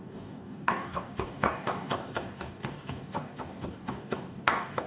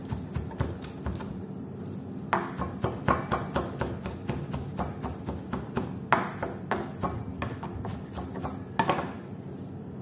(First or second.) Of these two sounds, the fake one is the first